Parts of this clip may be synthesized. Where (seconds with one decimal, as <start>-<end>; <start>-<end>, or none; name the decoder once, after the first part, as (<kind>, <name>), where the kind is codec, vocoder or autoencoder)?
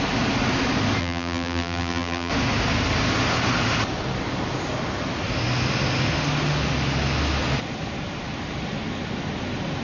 1.0-2.3 (vocoder, BigVGAN v2)